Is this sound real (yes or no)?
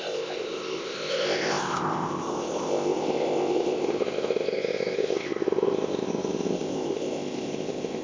no